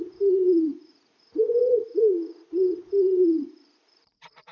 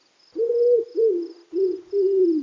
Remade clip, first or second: first